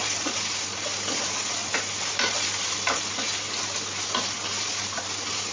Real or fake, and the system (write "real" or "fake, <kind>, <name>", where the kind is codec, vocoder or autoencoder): real